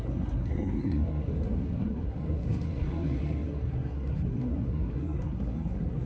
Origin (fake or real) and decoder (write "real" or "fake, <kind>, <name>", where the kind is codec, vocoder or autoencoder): fake, codec, SNAC